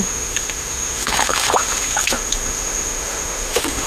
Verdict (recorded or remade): remade